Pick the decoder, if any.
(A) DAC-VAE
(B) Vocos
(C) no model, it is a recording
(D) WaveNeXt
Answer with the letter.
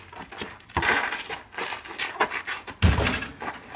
C